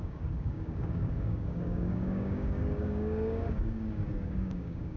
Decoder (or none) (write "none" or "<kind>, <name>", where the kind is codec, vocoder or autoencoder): codec, DAC